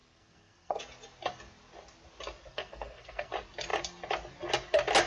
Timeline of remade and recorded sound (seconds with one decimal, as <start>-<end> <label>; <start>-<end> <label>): 0.0-0.8 remade; 0.8-2.5 recorded; 2.5-3.3 remade; 3.3-5.1 recorded